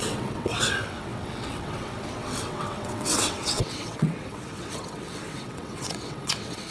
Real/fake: fake